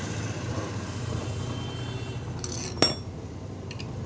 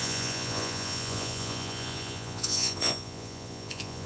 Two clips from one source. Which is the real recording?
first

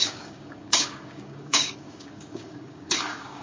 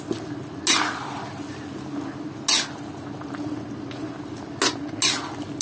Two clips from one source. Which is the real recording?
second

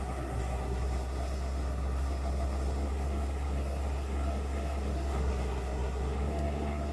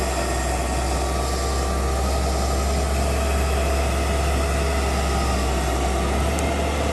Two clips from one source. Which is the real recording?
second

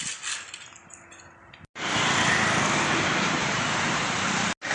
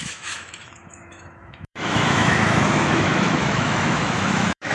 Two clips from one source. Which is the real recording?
first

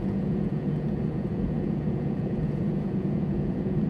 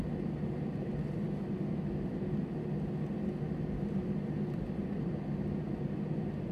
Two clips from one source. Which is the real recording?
second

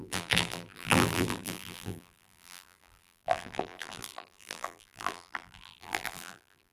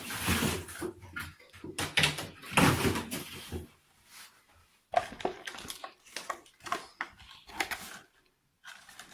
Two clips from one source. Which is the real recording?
second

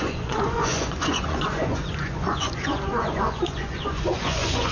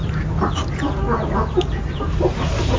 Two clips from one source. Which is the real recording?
second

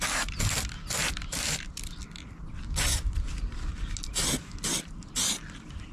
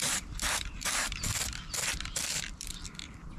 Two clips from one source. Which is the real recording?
first